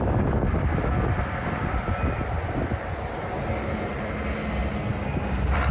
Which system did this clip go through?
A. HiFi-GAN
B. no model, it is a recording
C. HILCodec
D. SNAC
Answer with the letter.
B